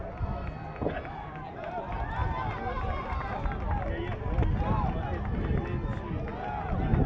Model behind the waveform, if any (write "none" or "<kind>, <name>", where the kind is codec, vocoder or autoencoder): none